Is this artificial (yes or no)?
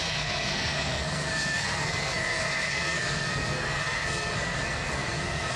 yes